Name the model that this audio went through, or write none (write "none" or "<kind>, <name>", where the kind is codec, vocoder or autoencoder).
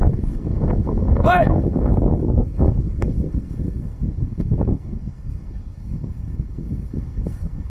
codec, SNAC